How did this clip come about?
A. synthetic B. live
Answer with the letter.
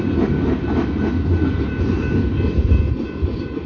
B